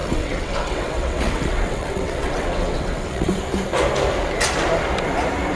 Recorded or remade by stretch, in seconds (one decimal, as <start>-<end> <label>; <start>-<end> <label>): 0.0-3.4 remade; 3.4-5.6 recorded